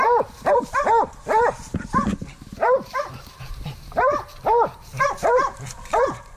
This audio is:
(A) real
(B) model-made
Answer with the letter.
B